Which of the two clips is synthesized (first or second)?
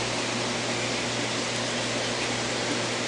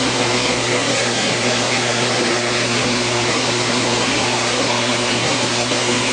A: second